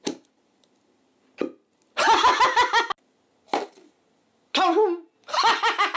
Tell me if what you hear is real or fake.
real